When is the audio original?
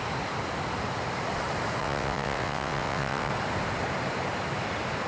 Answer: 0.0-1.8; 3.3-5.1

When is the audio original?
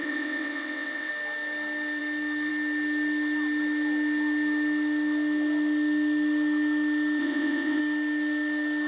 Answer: 1.1-7.2; 7.8-8.9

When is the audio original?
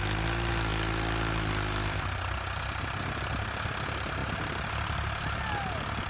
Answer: 0.0-6.1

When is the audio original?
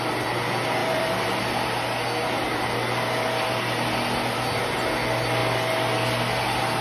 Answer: 0.0-0.8; 1.4-6.8